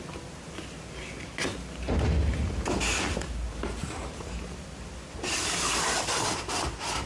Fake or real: real